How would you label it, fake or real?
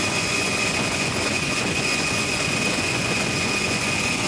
fake